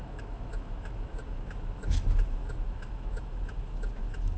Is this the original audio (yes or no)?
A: no